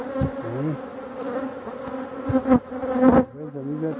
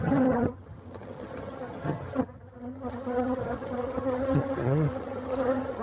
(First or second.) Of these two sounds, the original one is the first